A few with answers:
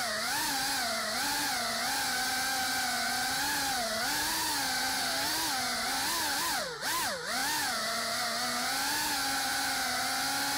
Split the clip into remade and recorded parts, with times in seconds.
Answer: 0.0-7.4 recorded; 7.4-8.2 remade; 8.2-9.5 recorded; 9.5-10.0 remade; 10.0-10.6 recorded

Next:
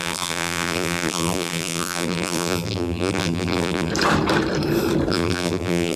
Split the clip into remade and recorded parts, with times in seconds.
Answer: 0.0-3.9 remade; 3.9-5.1 recorded; 5.1-6.0 remade

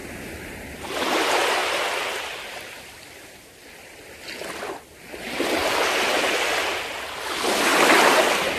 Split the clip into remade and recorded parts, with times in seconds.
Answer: 0.0-0.6 remade; 0.6-8.6 recorded

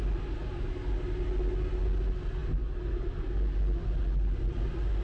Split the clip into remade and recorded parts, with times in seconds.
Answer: 0.0-5.0 recorded

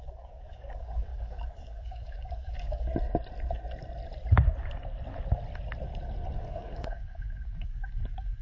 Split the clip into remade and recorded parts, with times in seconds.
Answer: 0.0-2.9 remade; 2.9-6.5 recorded; 6.5-8.4 remade

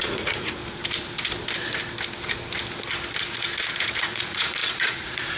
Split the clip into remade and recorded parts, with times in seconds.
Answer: 0.0-0.6 remade; 0.6-3.8 recorded; 3.8-5.4 remade

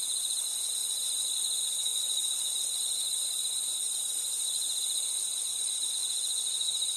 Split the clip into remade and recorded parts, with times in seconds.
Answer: 0.0-0.8 recorded; 0.8-1.4 remade; 1.4-1.9 recorded; 1.9-5.1 remade; 5.1-7.0 recorded

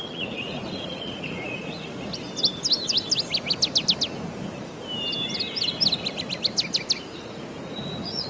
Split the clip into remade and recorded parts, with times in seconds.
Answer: 0.0-2.1 remade; 2.1-7.1 recorded; 7.1-8.3 remade